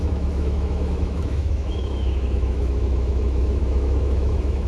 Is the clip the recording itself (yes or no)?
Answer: no